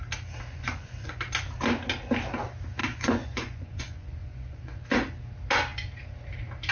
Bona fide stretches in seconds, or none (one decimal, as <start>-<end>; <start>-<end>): 0.0-0.5; 1.2-2.8; 4.8-6.7